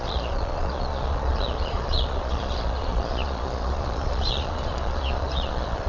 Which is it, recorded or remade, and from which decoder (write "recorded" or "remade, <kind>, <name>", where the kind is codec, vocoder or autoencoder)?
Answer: remade, vocoder, Vocos